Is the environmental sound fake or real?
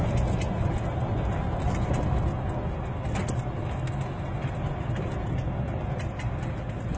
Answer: real